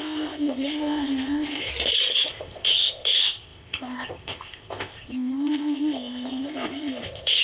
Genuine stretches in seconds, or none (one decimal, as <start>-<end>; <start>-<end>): 1.7-2.3